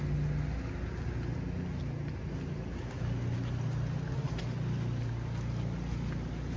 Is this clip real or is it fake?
real